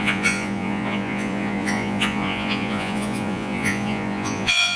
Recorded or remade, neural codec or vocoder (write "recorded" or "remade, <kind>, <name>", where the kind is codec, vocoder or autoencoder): remade, vocoder, Vocos